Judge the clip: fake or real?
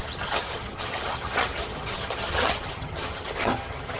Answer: fake